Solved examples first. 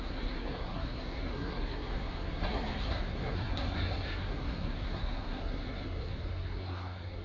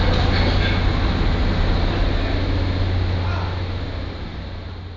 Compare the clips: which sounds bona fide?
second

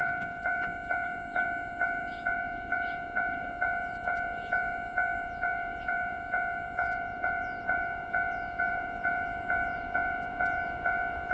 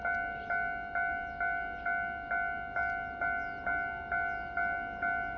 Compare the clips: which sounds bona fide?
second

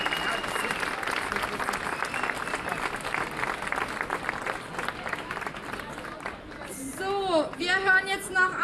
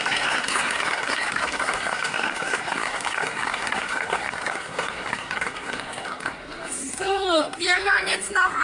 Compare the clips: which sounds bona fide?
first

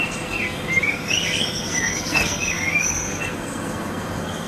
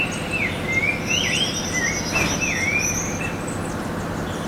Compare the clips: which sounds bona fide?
second